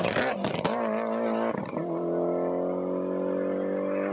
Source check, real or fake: real